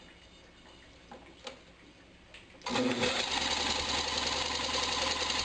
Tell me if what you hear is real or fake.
real